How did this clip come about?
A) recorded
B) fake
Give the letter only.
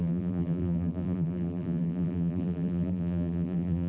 B